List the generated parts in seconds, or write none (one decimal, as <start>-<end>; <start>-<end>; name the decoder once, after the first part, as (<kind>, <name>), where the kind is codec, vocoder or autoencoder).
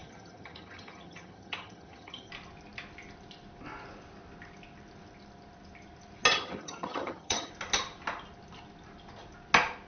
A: 0.0-2.3 (vocoder, HiFi-GAN); 6.3-7.5